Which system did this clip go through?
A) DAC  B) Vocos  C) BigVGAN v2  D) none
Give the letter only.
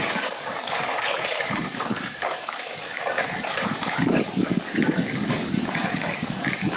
A